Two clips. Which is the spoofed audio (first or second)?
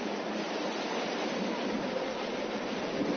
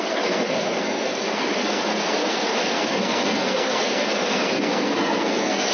second